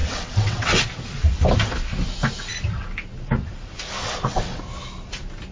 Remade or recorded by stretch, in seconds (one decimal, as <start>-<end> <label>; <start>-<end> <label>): 0.0-0.8 remade; 0.8-4.0 recorded; 4.0-4.6 remade; 4.6-5.5 recorded